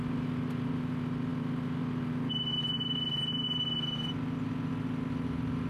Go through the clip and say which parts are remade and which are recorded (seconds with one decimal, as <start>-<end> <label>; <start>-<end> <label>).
0.0-5.7 recorded